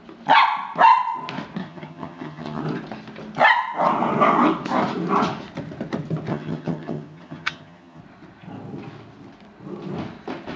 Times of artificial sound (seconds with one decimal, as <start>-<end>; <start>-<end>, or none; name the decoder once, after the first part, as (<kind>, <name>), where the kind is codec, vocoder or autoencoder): 1.6-2.6 (vocoder, HiFi-GAN); 6.3-8.0